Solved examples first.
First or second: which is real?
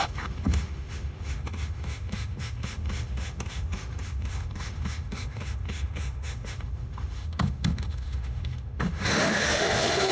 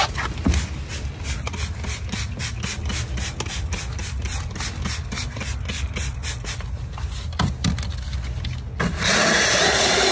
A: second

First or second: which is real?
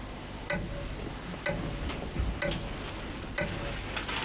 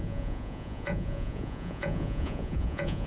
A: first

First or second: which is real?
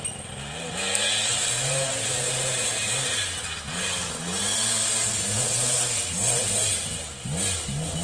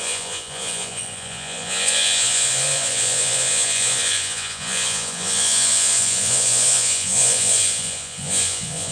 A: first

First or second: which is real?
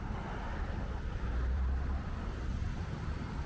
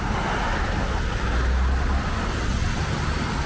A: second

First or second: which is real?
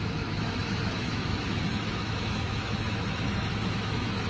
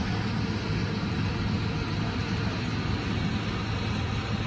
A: second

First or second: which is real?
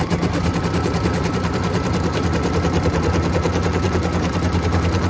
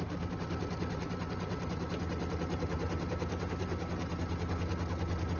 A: second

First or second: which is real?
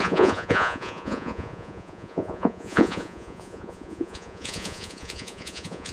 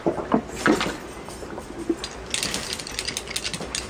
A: second